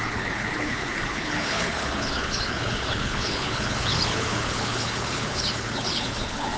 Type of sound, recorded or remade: remade